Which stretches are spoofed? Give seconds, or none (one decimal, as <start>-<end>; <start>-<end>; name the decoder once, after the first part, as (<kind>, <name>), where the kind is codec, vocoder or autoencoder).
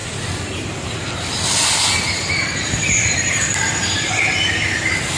none